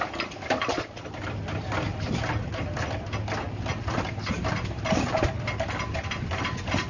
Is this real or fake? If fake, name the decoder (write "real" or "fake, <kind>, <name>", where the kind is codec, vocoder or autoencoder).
real